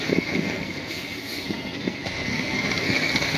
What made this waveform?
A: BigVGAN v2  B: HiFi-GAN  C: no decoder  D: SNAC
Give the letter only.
D